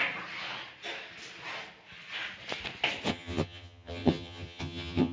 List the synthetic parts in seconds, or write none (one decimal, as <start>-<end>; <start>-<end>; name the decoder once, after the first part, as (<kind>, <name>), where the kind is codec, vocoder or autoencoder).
3.1-5.1 (vocoder, HiFi-GAN)